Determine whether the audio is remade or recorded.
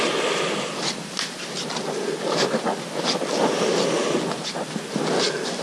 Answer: recorded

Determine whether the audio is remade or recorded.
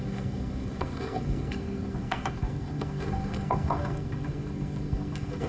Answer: remade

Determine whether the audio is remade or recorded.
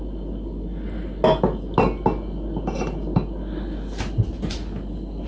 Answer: recorded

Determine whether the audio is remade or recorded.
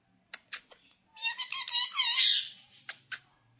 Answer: recorded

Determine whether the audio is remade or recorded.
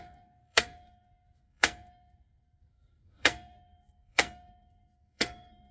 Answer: remade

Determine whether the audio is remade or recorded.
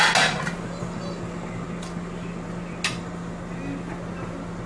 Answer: recorded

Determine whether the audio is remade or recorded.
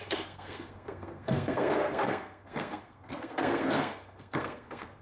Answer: remade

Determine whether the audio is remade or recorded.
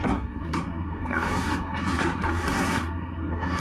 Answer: remade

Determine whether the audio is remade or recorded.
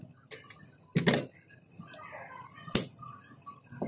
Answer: recorded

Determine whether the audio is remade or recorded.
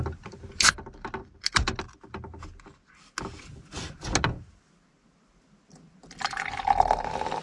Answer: recorded